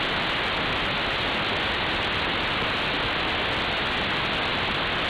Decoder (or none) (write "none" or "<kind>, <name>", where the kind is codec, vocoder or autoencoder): none